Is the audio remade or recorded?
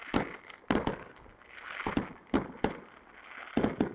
recorded